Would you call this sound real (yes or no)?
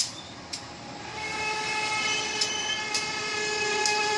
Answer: yes